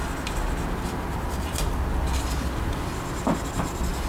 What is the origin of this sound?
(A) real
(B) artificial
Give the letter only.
A